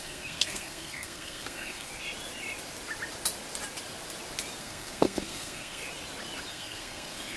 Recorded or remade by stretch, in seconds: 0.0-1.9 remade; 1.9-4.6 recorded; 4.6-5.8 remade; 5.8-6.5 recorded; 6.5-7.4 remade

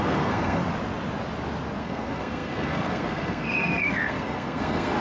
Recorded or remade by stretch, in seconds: 0.0-0.6 remade; 0.6-1.8 recorded; 1.8-5.0 remade

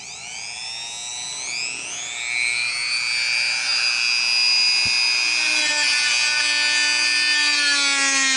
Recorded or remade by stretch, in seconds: 0.0-8.4 recorded

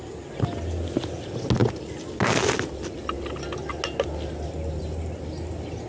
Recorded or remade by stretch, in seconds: 0.0-5.9 recorded

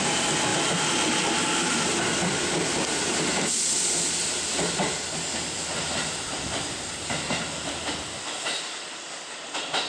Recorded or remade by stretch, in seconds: 0.0-4.2 recorded; 4.2-4.8 remade; 4.8-9.9 recorded

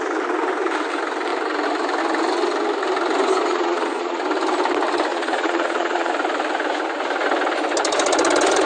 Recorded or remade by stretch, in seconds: 0.0-3.5 recorded; 3.5-4.2 remade; 4.2-5.1 recorded; 5.1-6.1 remade; 6.1-8.7 recorded